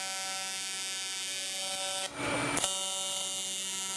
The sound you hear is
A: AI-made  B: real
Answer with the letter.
B